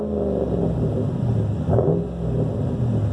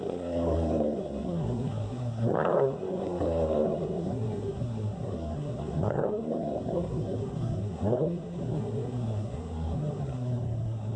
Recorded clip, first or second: first